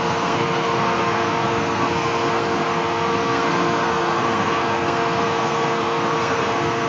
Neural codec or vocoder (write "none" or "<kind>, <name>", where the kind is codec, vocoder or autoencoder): codec, SNAC